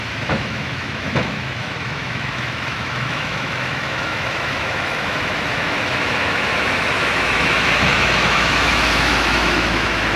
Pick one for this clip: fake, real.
fake